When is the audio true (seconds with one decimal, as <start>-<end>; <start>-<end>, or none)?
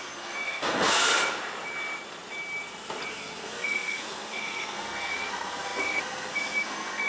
1.1-3.1